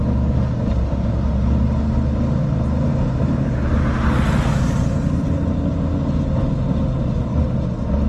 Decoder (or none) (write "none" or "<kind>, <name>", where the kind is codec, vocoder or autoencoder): none